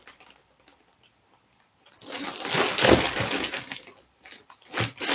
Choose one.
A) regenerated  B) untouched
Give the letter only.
B